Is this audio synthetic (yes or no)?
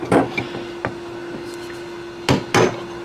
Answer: no